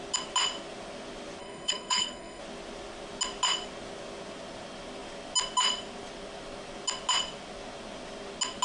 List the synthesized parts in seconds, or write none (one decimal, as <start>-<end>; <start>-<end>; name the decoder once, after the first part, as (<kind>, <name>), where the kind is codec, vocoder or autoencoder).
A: 1.4-2.4 (codec, HILCodec)